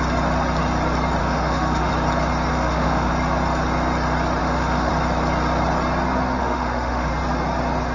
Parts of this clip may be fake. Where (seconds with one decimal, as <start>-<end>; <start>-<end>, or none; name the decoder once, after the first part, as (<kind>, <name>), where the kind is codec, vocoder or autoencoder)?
1.2-1.9 (autoencoder, DAC-VAE); 2.5-3.1; 4.4-4.9; 6.4-7.1